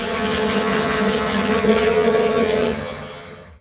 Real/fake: fake